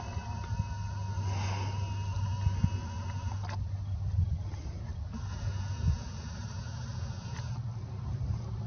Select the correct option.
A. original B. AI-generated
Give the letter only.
A